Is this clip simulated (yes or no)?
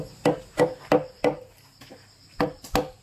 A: no